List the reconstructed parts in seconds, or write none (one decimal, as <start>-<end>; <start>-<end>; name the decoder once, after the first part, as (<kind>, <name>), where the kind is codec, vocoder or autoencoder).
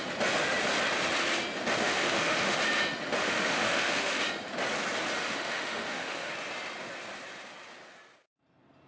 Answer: 1.8-2.6 (autoencoder, DAC-VAE); 3.2-4.2; 5.2-6.3